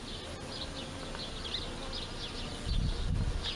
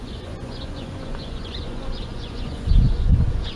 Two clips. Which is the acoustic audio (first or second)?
first